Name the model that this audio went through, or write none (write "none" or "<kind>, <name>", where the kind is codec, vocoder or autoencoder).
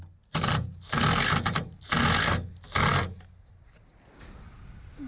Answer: none